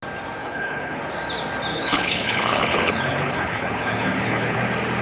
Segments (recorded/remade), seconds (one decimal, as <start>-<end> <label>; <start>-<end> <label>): 0.0-0.4 recorded; 0.4-1.0 remade; 1.0-1.7 recorded; 1.7-4.6 remade; 4.6-5.0 recorded